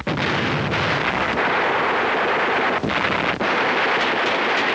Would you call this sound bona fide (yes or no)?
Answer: yes